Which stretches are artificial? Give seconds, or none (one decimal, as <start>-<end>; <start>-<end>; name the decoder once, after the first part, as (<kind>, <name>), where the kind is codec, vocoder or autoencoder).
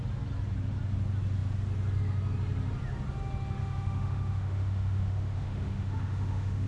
3.6-6.7 (autoencoder, DAC-VAE)